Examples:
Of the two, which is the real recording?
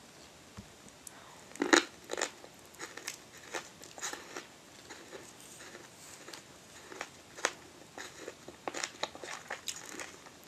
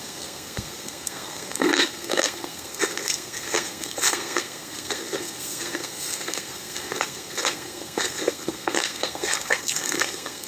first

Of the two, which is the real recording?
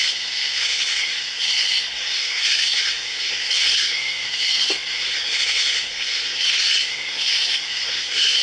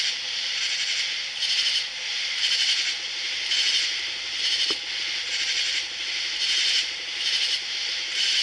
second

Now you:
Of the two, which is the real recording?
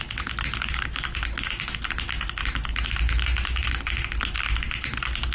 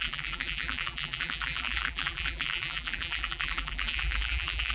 first